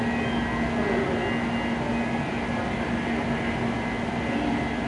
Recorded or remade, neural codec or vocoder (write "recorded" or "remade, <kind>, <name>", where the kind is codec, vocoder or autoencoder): recorded